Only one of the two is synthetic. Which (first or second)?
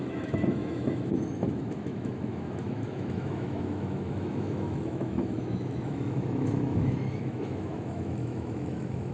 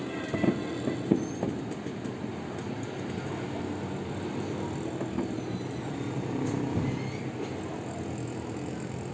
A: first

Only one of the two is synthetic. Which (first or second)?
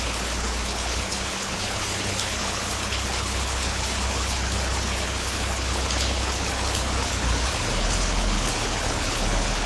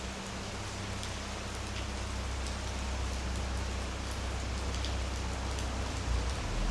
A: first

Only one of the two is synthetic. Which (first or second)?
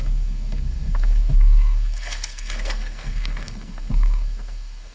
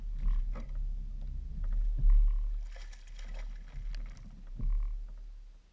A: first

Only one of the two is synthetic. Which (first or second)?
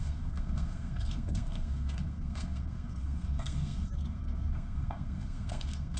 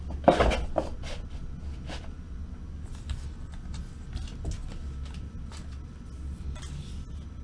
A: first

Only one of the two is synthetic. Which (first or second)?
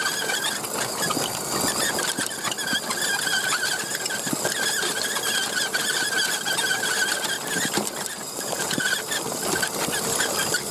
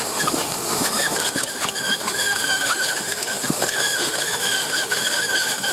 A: second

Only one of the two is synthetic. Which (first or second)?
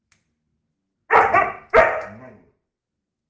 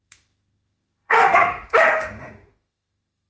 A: second